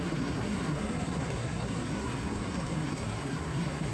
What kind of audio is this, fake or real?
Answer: fake